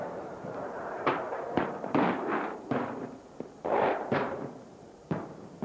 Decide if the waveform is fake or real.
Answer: fake